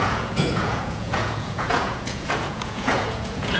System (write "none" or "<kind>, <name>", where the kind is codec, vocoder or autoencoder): vocoder, Vocos